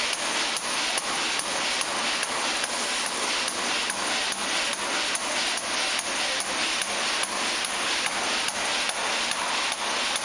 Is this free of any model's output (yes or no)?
yes